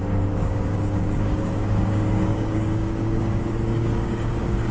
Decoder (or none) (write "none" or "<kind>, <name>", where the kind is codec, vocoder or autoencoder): codec, DAC